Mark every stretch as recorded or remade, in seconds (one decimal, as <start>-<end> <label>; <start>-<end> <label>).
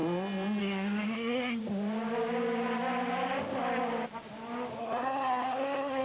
0.0-0.6 recorded; 0.6-1.6 remade; 1.6-4.8 recorded; 4.8-6.0 remade